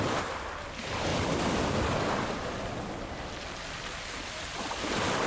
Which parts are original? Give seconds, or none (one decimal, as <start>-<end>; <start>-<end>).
0.0-5.3